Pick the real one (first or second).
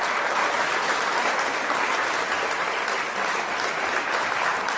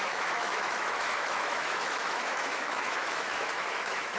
first